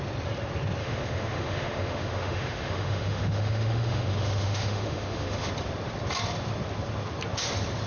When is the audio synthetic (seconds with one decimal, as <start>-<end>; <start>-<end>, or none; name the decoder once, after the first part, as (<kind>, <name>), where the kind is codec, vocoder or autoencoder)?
0.8-5.5 (autoencoder, DAC-VAE)